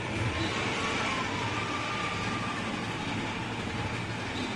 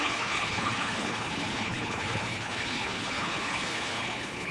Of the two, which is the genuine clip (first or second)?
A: first